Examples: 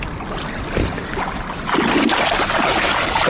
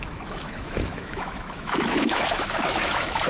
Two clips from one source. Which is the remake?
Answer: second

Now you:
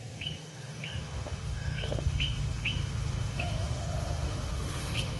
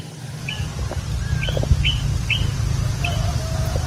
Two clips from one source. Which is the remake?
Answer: first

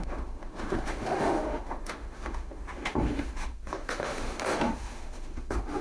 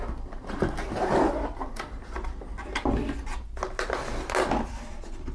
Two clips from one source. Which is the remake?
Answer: first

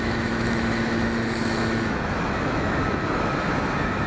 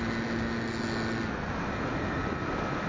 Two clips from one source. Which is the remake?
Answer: first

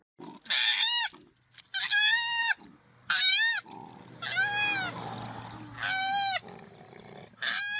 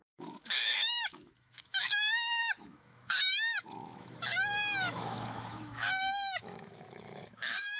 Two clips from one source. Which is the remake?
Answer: second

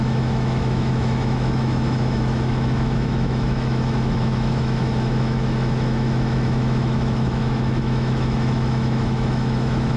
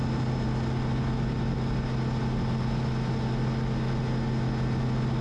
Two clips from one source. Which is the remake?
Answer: first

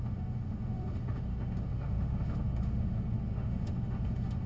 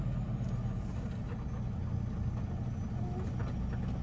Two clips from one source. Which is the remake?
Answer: first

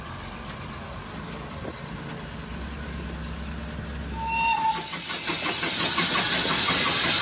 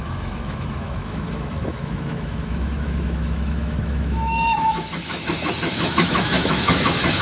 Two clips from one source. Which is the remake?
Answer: second